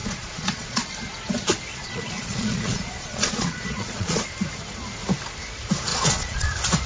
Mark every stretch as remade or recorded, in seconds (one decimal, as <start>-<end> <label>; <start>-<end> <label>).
0.0-0.8 remade; 0.8-1.7 recorded; 1.7-4.3 remade; 4.3-5.9 recorded; 5.9-6.5 remade; 6.5-6.9 recorded